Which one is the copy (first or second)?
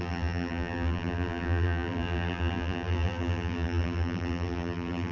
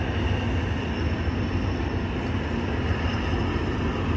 first